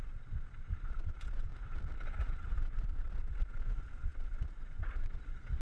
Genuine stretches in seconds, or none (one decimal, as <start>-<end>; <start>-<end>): 1.5-2.1